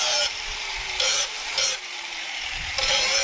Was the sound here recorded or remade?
remade